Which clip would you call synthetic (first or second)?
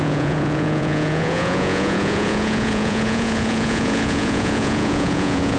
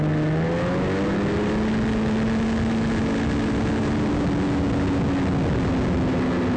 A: first